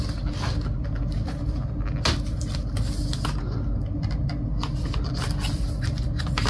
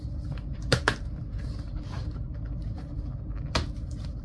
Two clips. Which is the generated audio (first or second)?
second